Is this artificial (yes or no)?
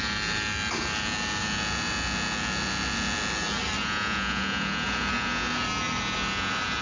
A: no